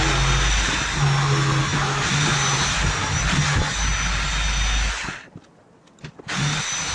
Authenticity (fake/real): real